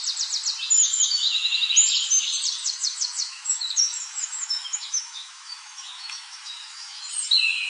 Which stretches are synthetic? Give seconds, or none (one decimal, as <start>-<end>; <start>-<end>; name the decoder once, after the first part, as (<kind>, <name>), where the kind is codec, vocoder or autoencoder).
0.8-1.7 (autoencoder, DAC-VAE); 2.6-7.1